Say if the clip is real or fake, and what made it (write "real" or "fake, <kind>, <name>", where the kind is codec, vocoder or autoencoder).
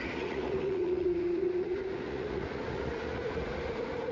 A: fake, vocoder, Vocos